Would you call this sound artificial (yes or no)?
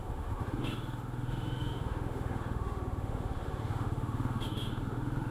yes